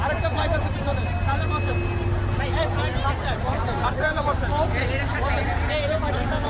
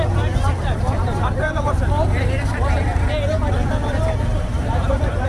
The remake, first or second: second